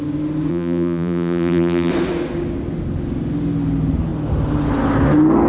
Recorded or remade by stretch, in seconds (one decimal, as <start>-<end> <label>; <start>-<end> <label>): 0.0-0.5 recorded; 0.5-1.9 remade; 1.9-5.5 recorded